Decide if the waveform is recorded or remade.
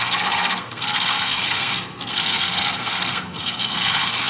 remade